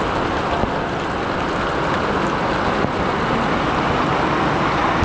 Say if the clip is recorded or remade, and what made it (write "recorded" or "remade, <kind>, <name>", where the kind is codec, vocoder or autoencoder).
recorded